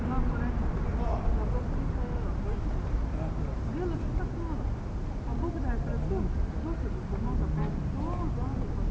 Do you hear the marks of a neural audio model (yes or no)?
no